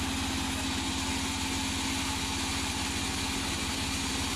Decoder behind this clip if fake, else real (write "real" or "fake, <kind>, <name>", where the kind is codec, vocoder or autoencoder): real